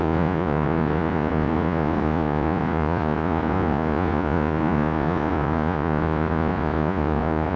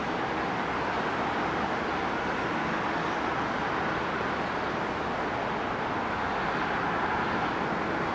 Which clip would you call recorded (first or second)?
second